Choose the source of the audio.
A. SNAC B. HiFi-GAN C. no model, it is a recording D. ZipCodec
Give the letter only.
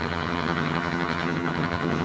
B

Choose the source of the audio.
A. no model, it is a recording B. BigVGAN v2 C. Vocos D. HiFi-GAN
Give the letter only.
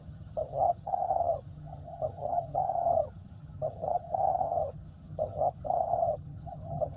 D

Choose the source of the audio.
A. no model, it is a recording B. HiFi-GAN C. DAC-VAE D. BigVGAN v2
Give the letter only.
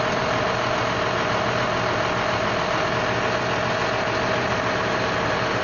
A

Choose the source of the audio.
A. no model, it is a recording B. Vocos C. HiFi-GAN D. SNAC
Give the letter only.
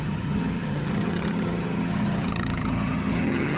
C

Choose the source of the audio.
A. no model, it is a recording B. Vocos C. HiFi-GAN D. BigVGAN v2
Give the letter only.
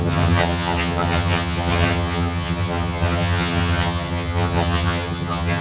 C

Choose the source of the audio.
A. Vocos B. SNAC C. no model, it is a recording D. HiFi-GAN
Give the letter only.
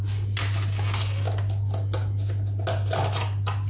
C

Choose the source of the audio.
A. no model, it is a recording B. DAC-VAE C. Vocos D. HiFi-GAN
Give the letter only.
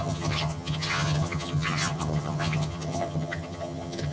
D